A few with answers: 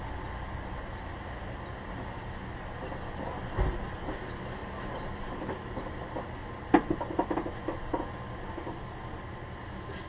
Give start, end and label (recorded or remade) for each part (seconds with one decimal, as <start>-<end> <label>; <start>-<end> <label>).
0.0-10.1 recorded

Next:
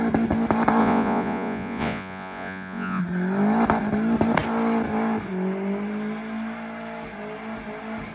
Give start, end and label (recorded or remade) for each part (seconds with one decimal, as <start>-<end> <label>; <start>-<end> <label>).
0.0-0.8 recorded; 0.8-3.0 remade; 3.0-8.1 recorded

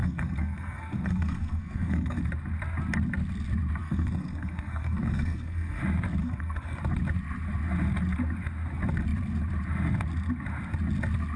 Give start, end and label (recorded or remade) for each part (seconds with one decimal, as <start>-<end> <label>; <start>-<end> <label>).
0.0-2.2 remade; 2.2-3.8 recorded; 3.8-5.8 remade; 5.8-6.2 recorded; 6.2-6.8 remade; 6.8-11.4 recorded

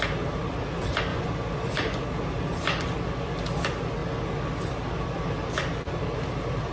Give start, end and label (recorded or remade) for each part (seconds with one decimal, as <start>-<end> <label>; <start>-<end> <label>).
0.0-1.1 recorded; 1.1-2.0 remade; 2.0-6.7 recorded

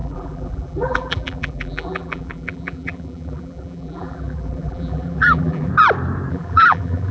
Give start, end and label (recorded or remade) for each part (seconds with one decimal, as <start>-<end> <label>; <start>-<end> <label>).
0.0-5.7 remade; 5.7-6.3 recorded; 6.3-7.1 remade

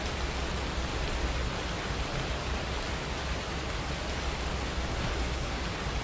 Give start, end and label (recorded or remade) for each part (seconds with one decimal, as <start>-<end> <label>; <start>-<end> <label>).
0.0-4.9 recorded; 4.9-5.6 remade; 5.6-6.0 recorded